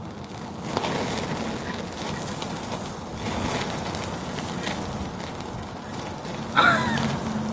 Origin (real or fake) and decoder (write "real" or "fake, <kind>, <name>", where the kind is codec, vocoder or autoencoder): real